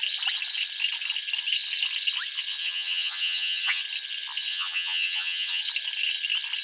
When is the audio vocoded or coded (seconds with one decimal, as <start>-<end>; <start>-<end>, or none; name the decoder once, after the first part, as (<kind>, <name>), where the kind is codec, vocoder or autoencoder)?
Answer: 2.6-3.8 (vocoder, HiFi-GAN); 4.5-5.6

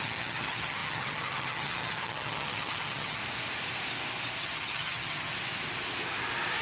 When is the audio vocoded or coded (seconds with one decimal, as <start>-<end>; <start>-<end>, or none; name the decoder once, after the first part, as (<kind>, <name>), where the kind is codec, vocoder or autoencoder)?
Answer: 0.0-3.2 (vocoder, HiFi-GAN); 4.4-5.3

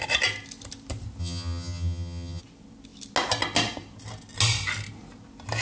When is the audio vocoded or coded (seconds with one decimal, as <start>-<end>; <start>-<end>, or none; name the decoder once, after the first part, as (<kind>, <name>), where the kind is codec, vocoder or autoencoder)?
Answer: 1.2-2.4 (vocoder, HiFi-GAN)

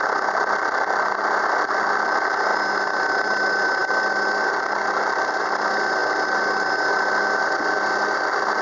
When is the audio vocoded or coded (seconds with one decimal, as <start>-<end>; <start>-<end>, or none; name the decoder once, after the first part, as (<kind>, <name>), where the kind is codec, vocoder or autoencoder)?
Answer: none